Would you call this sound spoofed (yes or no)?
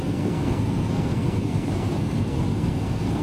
yes